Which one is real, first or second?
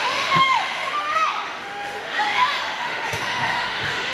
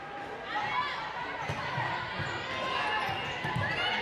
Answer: second